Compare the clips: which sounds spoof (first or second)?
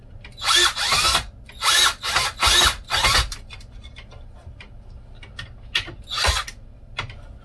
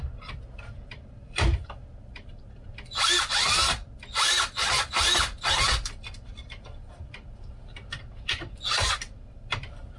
second